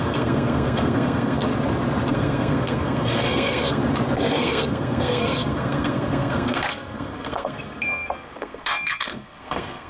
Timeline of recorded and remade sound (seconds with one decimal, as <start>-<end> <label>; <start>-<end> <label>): 0.0-1.5 remade; 1.5-2.1 recorded; 2.1-3.8 remade; 3.8-4.4 recorded; 4.4-9.9 remade